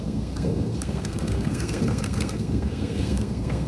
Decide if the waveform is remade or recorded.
remade